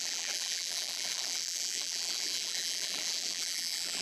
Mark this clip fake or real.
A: fake